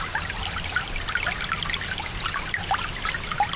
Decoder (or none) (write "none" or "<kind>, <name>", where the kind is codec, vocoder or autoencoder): none